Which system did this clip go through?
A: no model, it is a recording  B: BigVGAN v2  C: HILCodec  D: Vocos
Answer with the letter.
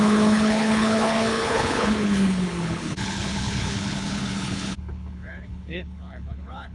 C